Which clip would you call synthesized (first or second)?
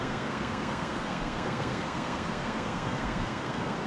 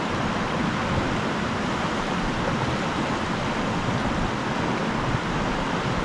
first